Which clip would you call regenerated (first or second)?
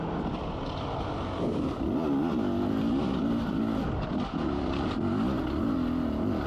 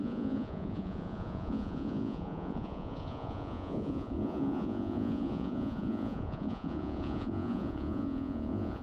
second